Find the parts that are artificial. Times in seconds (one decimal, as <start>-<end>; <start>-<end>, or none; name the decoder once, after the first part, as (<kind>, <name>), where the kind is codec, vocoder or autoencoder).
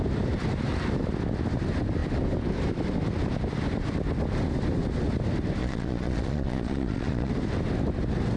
5.6-7.3 (vocoder, Vocos)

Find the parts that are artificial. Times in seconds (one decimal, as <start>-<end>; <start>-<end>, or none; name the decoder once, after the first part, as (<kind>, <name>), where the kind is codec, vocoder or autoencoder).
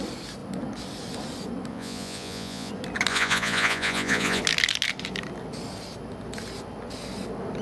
1.7-2.7 (vocoder, Vocos); 3.1-4.4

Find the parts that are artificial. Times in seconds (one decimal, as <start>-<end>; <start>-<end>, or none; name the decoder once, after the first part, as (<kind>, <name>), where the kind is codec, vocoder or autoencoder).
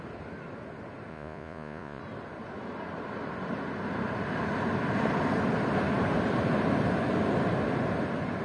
1.1-2.0 (vocoder, Vocos)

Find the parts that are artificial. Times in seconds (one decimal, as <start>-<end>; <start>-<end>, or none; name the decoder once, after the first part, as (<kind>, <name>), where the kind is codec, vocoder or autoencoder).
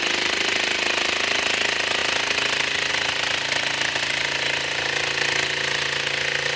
none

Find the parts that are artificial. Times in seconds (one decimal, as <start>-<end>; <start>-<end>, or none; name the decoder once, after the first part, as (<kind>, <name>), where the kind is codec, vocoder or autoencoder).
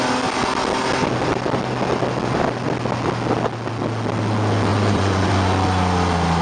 4.7-5.3 (vocoder, Vocos)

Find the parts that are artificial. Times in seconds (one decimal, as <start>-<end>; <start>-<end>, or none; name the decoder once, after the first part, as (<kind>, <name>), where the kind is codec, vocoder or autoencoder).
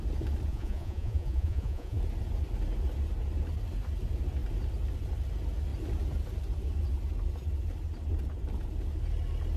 0.5-2.0 (vocoder, Vocos)